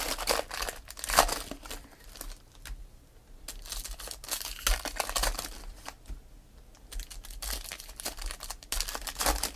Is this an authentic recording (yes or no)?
yes